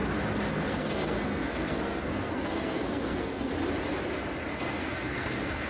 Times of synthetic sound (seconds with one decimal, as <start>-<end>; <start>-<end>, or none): 0.5-3.5; 4.5-5.7